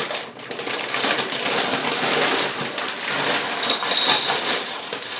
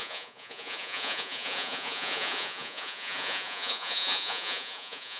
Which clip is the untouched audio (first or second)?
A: first